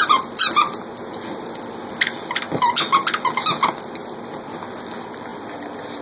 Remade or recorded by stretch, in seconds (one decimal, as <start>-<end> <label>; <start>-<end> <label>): 0.0-6.0 recorded

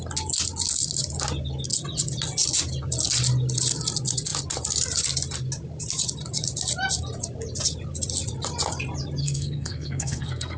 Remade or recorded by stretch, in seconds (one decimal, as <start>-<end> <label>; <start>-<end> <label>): 0.0-9.2 recorded; 9.2-10.6 remade

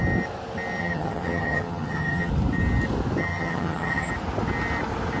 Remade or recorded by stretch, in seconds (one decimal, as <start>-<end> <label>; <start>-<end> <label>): 0.0-0.8 recorded; 0.8-2.3 remade; 2.3-3.2 recorded; 3.2-4.1 remade; 4.1-5.2 recorded

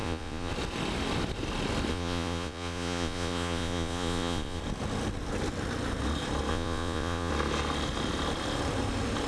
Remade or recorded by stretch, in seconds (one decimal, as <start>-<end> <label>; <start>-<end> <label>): 0.0-0.5 remade; 0.5-1.9 recorded; 1.9-4.6 remade; 4.6-6.5 recorded; 6.5-7.3 remade; 7.3-9.3 recorded

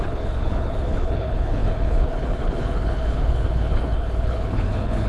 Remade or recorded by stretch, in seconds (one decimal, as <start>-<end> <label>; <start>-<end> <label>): 0.0-5.1 remade

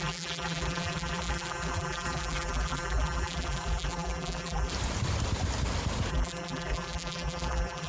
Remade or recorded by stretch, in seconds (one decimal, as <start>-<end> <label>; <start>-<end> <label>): 0.0-4.7 remade; 4.7-6.1 recorded; 6.1-7.9 remade

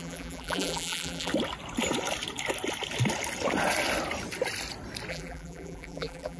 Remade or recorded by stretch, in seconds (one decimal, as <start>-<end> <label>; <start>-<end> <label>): 0.0-1.3 remade; 1.3-5.1 recorded; 5.1-6.4 remade